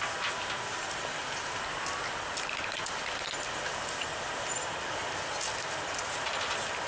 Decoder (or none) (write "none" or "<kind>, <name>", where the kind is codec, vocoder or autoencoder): none